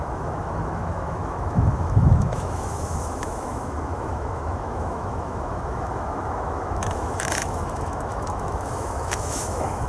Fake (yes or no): yes